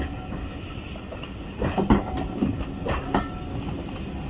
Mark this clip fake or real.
real